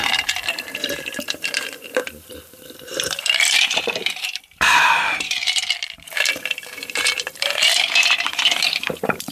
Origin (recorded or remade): remade